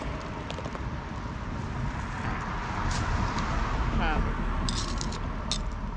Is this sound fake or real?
real